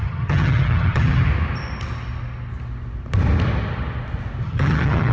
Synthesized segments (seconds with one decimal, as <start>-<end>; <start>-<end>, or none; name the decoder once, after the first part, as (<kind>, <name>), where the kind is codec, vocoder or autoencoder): 0.0-1.3 (vocoder, HiFi-GAN); 4.4-5.1